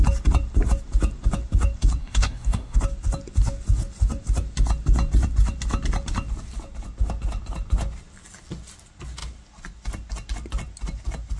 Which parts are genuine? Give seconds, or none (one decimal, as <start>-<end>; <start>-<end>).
0.0-2.0; 2.8-11.4